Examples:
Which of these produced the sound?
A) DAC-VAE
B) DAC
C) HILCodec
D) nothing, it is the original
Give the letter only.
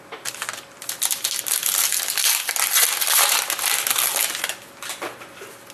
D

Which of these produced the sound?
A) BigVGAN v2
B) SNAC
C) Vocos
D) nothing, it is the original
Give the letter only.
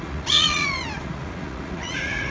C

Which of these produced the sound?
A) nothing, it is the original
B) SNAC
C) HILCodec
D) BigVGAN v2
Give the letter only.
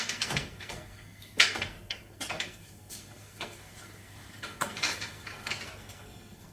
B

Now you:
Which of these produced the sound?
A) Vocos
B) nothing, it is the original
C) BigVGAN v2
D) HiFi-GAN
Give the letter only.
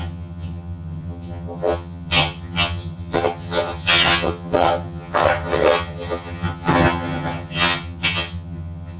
D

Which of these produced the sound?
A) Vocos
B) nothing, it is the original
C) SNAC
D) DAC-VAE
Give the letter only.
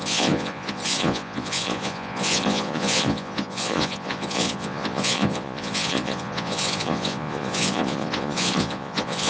A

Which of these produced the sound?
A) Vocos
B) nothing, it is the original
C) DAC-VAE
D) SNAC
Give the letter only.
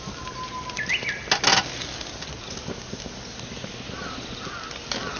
B